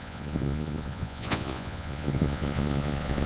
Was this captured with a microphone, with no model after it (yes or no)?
no